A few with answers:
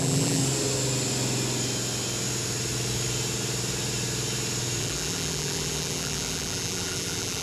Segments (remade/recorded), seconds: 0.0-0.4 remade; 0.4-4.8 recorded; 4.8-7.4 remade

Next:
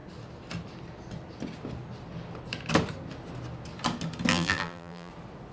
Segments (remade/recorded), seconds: 0.0-4.3 recorded; 4.3-5.1 remade; 5.1-5.5 recorded

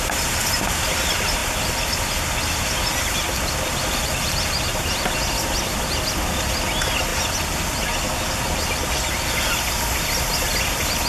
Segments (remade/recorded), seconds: 0.0-11.1 recorded

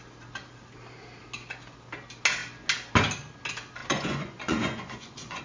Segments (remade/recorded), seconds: 0.0-3.8 recorded; 3.8-5.4 remade

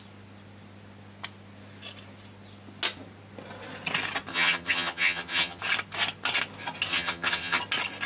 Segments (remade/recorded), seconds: 0.0-4.3 recorded; 4.3-5.6 remade; 5.6-6.9 recorded; 6.9-7.6 remade; 7.6-8.1 recorded